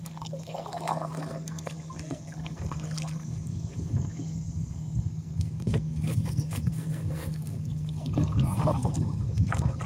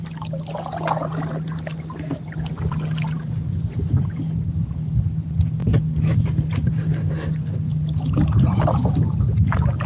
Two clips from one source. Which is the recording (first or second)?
second